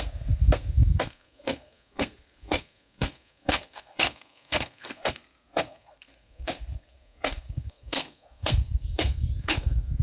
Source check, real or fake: fake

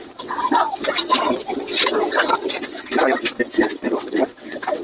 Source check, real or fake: fake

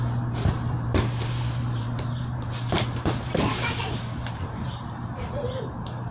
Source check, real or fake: fake